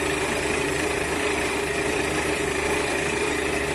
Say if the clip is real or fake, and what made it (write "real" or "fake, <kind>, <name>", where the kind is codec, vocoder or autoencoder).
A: fake, vocoder, BigVGAN v2